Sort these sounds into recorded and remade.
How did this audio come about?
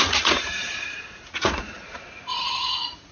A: remade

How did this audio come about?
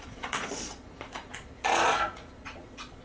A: remade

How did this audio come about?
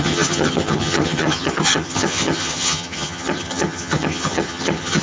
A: remade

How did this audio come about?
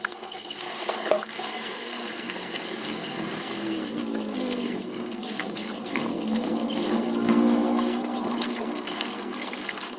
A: remade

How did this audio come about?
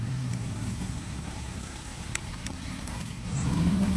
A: remade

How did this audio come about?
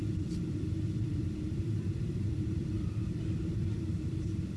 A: remade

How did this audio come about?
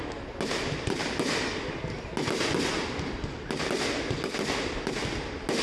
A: recorded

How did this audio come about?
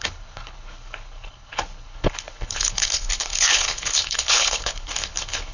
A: remade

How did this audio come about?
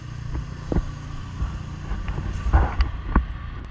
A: recorded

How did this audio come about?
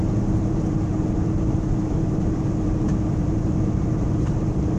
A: remade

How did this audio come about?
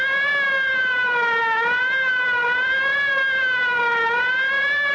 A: recorded